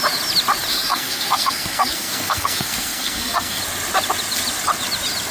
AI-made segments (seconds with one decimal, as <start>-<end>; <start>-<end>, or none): 0.7-3.6